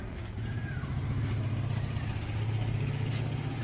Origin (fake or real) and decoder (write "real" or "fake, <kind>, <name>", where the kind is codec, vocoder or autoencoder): real